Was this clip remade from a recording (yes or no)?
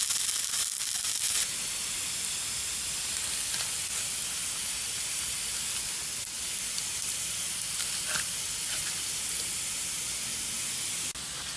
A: no